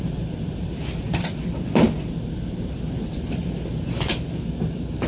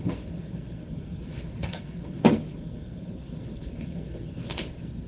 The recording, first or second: first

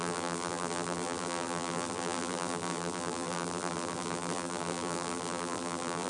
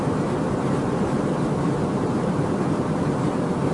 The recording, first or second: second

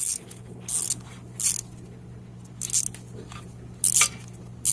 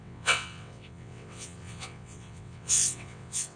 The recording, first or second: first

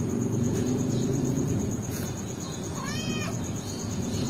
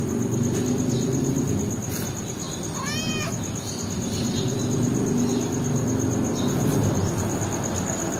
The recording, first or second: second